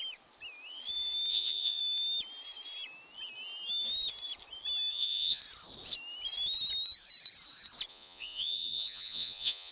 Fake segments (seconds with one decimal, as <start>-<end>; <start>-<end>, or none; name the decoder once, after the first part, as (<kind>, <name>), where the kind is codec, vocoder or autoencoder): 1.3-1.8 (vocoder, Vocos); 4.9-5.4; 7.9-9.7